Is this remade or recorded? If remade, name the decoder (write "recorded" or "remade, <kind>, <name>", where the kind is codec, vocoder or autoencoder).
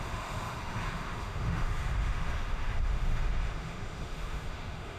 remade, autoencoder, DAC-VAE